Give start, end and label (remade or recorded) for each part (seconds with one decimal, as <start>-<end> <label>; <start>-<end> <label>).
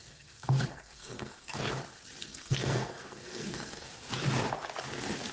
0.0-1.6 remade; 1.6-2.2 recorded; 2.2-3.9 remade; 3.9-5.3 recorded